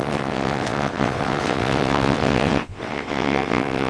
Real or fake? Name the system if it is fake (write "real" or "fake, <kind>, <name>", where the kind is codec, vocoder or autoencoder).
fake, vocoder, WaveNeXt